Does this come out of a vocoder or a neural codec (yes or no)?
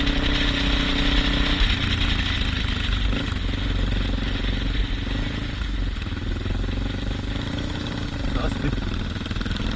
no